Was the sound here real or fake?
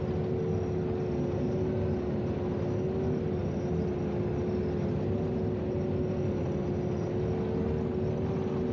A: real